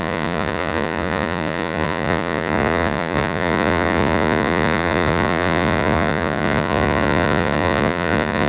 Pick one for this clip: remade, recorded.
remade